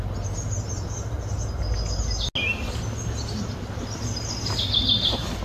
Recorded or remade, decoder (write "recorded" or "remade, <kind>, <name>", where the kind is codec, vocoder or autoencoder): recorded